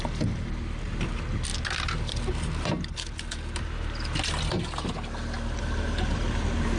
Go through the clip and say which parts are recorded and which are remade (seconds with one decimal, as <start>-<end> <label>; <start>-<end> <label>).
0.0-6.8 recorded